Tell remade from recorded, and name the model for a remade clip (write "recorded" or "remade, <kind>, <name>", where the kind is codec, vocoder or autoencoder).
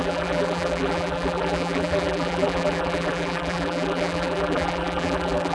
remade, vocoder, BigVGAN v2